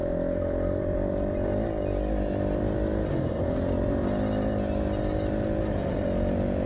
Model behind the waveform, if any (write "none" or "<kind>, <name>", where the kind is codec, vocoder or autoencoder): none